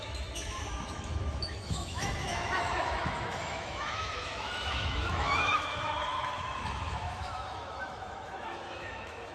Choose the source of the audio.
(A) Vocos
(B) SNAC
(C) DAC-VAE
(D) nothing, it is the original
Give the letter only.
C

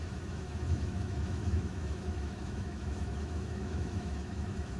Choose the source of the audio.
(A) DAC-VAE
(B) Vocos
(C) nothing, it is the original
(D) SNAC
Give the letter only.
A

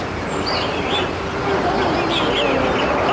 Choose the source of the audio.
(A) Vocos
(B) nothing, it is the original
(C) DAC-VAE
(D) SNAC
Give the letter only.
B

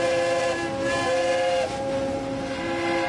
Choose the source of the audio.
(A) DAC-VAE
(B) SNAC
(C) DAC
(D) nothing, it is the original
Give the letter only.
D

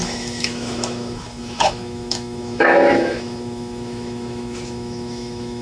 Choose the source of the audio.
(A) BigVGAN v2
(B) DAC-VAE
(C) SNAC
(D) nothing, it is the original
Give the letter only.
B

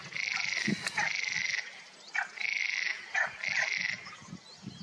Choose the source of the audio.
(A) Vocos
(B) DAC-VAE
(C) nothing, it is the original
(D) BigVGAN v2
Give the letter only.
C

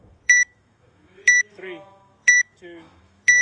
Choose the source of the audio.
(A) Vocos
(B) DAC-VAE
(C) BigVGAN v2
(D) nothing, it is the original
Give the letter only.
B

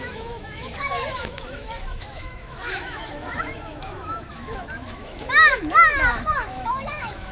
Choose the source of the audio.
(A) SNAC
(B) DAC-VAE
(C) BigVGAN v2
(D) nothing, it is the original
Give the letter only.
B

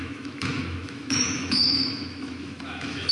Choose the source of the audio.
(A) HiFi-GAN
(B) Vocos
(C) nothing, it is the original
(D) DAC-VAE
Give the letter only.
D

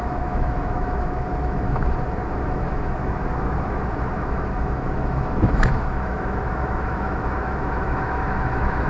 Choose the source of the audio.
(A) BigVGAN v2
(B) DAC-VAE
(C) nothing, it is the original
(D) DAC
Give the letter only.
B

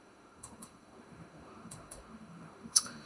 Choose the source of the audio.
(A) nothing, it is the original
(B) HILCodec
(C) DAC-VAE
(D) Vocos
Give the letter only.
C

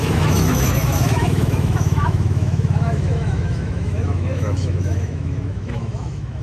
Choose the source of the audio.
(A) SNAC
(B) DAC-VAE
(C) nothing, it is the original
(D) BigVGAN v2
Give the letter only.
B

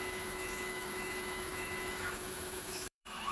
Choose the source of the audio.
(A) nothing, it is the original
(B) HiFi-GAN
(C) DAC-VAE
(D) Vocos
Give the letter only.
C